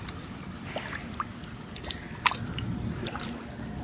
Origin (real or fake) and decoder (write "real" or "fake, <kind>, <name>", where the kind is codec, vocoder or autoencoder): fake, vocoder, BigVGAN v2